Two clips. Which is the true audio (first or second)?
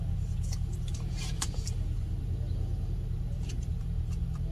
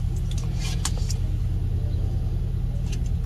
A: second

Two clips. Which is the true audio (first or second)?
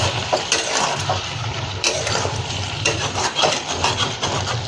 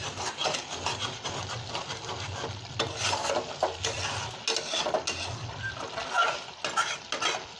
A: second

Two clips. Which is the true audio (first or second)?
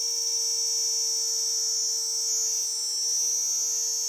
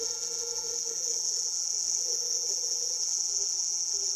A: first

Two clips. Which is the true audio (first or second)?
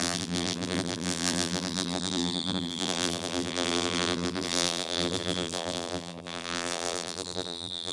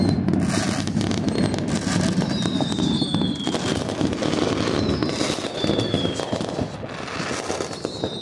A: second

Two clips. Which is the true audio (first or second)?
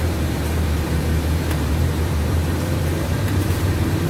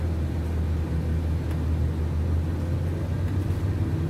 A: second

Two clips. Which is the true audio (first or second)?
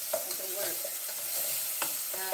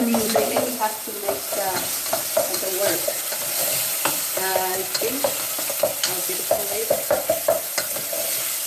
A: first